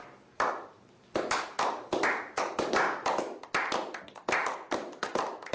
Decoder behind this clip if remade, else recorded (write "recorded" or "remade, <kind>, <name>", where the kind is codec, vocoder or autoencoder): recorded